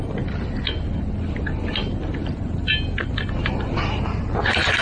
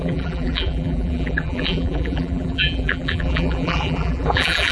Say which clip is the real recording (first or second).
first